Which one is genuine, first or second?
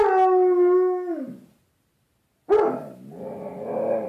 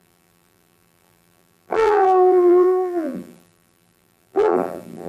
first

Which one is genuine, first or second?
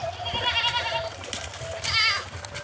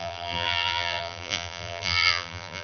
first